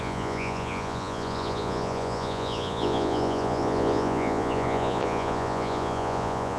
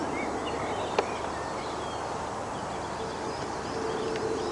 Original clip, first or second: second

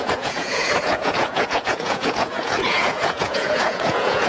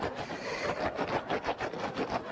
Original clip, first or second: second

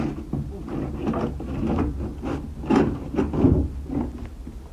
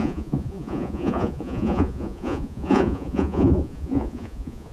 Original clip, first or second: first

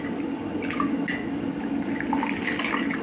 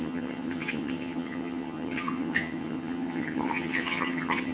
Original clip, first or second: first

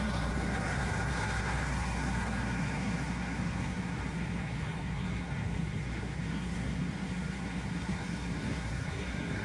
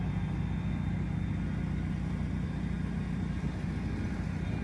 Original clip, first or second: second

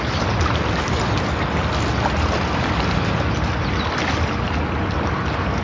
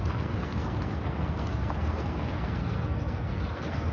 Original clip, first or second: first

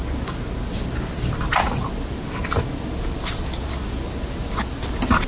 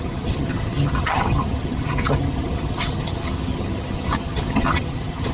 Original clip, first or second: first